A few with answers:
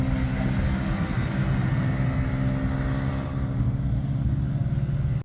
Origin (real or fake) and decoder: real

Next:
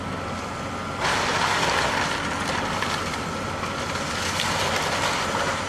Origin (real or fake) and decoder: real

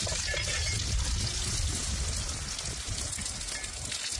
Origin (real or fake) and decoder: real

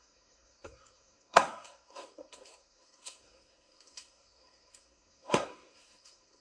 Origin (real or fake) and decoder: fake, codec, SNAC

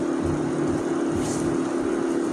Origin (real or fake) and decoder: real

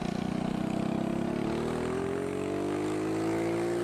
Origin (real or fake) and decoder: real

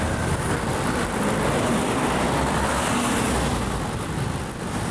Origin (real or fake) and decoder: real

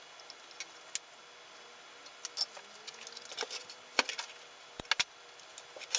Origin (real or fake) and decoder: real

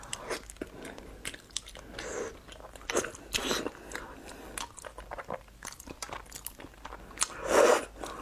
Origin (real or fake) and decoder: real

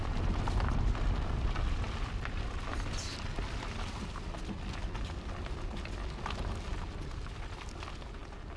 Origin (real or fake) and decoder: real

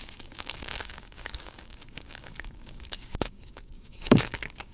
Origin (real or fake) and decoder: fake, codec, DAC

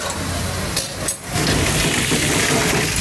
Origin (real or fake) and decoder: real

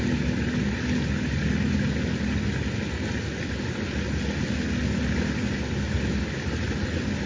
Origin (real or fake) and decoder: real